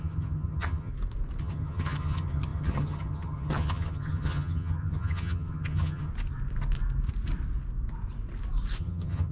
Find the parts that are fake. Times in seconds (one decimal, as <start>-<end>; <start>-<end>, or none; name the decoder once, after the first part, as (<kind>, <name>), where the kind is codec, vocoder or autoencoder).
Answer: 0.0-0.9 (vocoder, HiFi-GAN); 1.4-6.1; 8.8-9.3